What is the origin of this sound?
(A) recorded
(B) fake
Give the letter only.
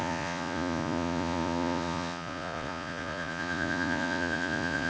B